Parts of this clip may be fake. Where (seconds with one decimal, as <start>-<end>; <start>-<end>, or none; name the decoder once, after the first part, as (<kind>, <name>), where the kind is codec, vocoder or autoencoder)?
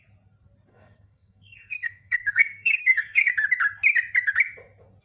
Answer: 0.7-3.3 (codec, SNAC)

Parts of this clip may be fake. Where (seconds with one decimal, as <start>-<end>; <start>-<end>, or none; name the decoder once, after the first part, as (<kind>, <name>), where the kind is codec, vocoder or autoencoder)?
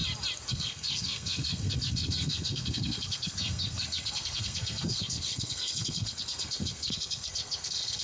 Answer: 0.5-8.0 (codec, SNAC)